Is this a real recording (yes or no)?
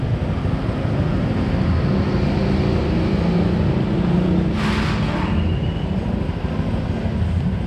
yes